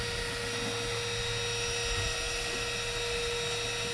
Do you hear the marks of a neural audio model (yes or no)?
no